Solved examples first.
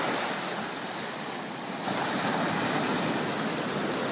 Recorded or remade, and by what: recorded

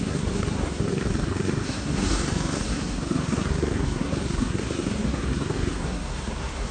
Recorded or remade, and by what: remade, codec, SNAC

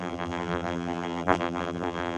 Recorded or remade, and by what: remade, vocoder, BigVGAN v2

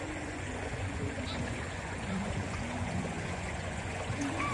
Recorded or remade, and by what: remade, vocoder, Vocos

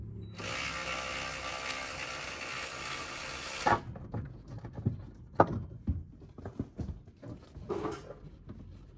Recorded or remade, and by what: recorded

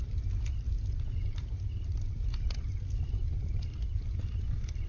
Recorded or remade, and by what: recorded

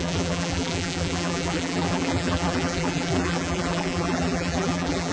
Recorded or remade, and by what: remade, vocoder, BigVGAN v2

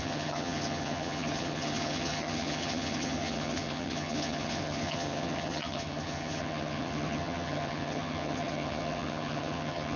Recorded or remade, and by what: remade, vocoder, HiFi-GAN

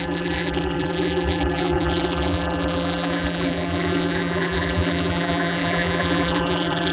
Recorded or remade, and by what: remade, vocoder, BigVGAN v2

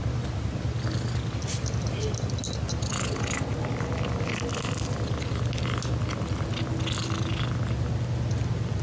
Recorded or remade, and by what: recorded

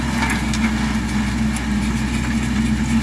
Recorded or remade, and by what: recorded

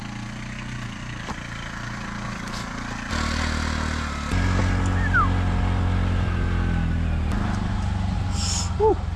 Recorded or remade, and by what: recorded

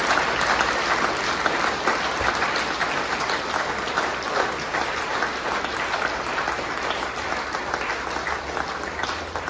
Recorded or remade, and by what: recorded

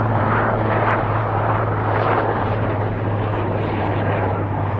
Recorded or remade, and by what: remade, vocoder, BigVGAN v2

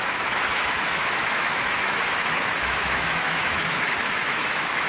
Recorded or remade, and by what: remade, autoencoder, DAC-VAE